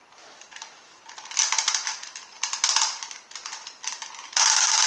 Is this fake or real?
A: real